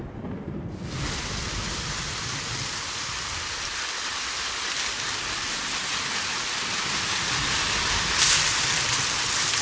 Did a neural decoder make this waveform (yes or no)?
yes